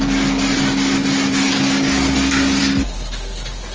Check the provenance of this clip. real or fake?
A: real